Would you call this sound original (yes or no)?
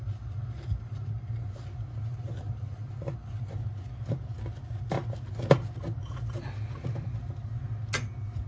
yes